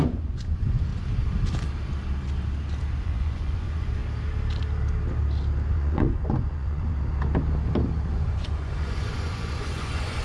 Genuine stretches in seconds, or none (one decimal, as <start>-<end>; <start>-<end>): 0.9-3.0; 4.0-5.7; 6.9-8.1